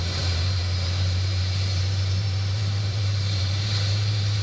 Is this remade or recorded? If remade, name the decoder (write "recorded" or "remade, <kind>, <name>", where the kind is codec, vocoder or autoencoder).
remade, vocoder, BigVGAN v2